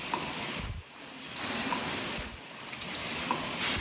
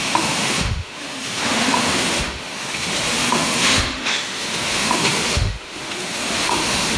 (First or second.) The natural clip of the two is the first